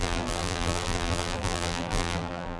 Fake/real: fake